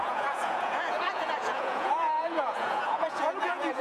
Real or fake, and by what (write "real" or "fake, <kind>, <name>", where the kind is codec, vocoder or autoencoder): fake, vocoder, Vocos